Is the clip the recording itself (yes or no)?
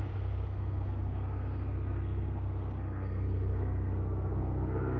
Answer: no